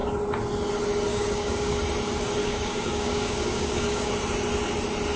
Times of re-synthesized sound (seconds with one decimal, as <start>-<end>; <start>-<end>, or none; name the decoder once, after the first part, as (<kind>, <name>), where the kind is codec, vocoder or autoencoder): 1.1-1.8 (codec, DAC); 2.4-4.1